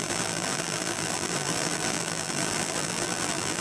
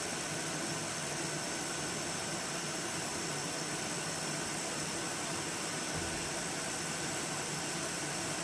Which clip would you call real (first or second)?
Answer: second